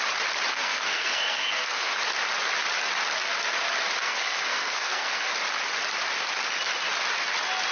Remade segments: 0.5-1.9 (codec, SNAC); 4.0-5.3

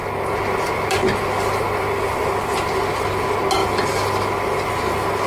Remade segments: none

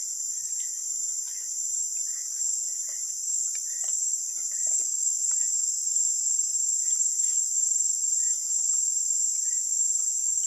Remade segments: none